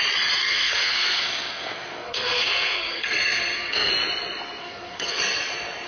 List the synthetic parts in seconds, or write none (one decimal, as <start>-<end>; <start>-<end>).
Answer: 0.4-3.9; 4.6-5.2